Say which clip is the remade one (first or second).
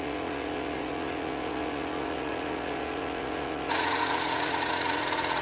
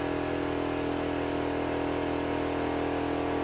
first